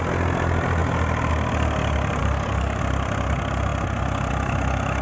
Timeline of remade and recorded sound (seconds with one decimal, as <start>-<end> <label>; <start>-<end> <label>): 0.0-2.2 recorded; 2.2-2.8 remade; 2.8-5.0 recorded